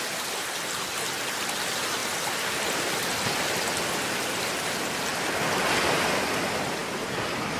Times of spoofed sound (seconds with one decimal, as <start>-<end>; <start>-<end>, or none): none